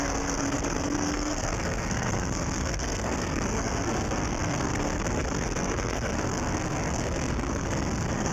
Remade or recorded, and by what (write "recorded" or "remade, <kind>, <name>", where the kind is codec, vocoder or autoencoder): remade, codec, SNAC